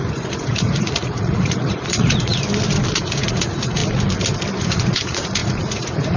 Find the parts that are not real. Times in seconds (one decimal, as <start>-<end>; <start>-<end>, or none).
0.0-2.4; 2.9-3.8; 4.6-6.2